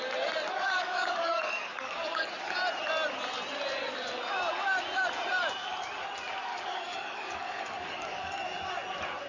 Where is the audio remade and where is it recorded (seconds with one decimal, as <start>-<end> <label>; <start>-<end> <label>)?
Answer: 0.0-0.5 recorded; 0.5-2.3 remade; 2.3-6.5 recorded; 6.5-8.4 remade; 8.4-9.3 recorded